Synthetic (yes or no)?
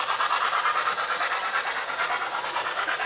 no